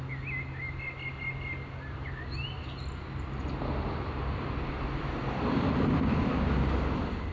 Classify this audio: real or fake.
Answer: real